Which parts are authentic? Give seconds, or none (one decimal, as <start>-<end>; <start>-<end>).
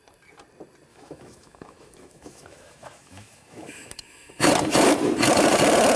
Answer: 0.0-0.9; 4.5-6.0